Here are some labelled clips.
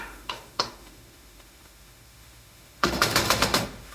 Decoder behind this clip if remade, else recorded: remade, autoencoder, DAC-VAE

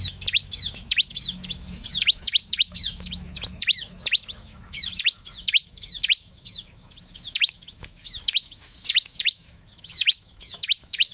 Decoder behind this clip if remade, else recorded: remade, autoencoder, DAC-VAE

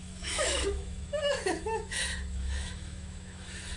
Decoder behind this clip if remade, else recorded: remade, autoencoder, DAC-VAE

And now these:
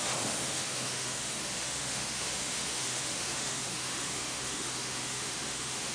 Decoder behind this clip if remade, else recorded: remade, autoencoder, DAC-VAE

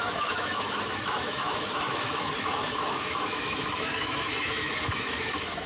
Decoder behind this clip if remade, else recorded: remade, autoencoder, DAC-VAE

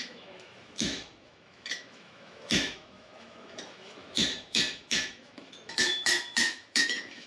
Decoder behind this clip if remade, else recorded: remade, autoencoder, DAC-VAE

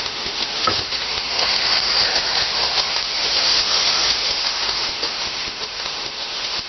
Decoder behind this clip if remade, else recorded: remade, autoencoder, DAC-VAE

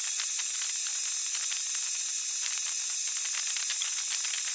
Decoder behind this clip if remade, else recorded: recorded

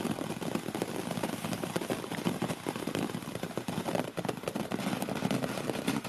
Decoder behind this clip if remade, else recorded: recorded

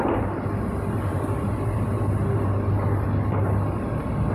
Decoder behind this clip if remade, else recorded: recorded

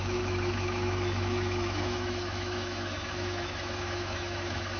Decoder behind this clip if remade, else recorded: remade, autoencoder, DAC-VAE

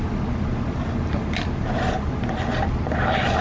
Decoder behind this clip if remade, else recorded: recorded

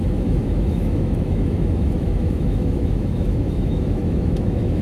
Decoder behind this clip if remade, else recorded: remade, autoencoder, DAC-VAE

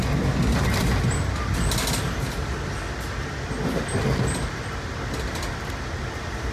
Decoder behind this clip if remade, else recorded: recorded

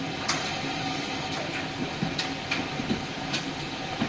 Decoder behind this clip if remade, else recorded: recorded